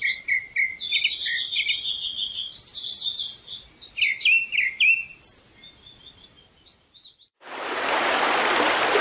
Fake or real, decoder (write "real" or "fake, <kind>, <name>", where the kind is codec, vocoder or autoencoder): real